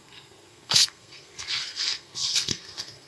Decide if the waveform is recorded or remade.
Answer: remade